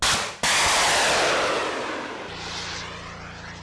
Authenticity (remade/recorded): recorded